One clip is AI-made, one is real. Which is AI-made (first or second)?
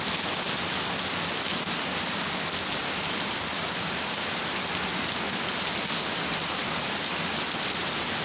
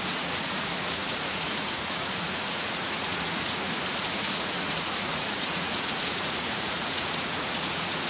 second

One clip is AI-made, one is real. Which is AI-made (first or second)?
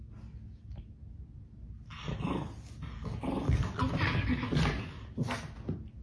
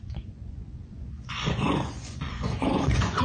second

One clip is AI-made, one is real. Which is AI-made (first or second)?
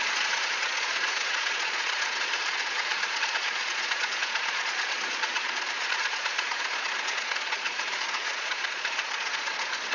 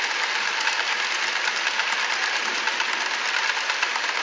first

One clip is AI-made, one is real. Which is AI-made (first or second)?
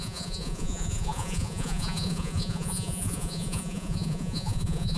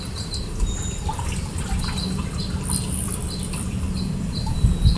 first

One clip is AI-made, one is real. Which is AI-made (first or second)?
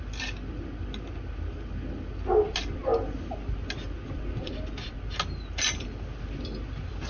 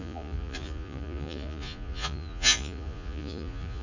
second